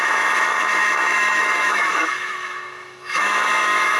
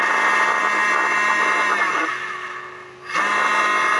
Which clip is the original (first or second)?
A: second